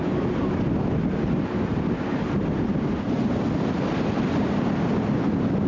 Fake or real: real